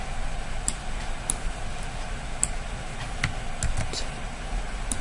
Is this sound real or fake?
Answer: real